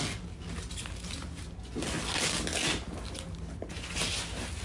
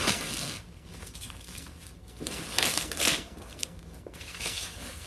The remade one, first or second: second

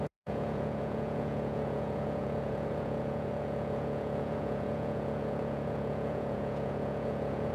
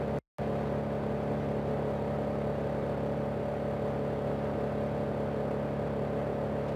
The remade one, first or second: first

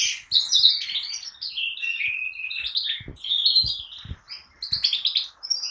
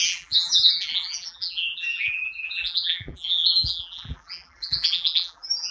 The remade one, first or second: second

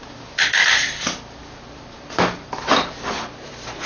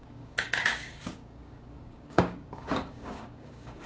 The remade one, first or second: second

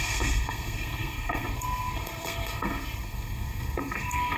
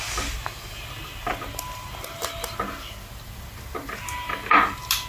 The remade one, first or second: first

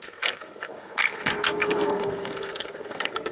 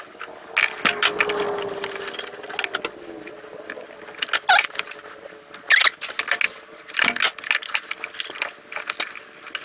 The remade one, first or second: first